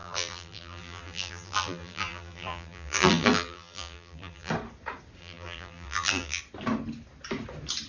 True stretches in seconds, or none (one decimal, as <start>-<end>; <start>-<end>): 4.5-5.2; 6.4-7.9